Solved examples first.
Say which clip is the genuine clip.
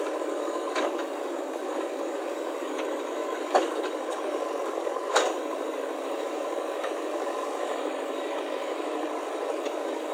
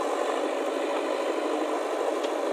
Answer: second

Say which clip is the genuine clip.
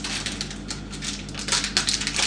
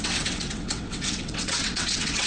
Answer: first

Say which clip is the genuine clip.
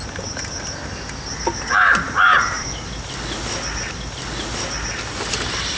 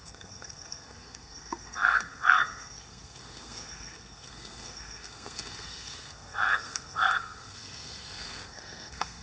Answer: first